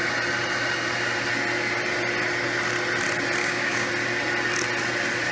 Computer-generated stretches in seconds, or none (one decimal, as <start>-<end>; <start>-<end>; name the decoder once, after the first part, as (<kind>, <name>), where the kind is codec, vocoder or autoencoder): 3.4-3.9 (codec, DAC)